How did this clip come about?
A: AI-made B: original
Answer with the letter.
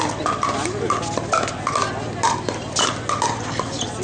B